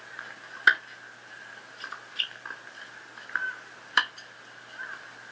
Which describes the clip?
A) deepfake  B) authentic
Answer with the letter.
B